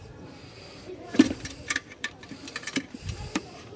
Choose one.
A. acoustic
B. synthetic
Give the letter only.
B